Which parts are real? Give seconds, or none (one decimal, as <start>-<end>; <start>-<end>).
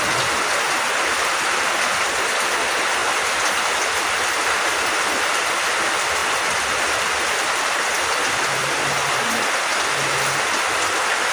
0.0-6.2; 7.2-11.3